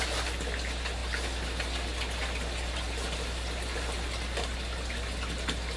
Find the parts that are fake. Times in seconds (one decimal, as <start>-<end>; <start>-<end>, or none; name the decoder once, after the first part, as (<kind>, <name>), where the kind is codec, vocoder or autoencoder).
none